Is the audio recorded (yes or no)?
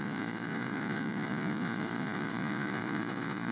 no